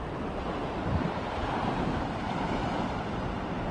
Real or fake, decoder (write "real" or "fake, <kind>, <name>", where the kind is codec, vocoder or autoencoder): real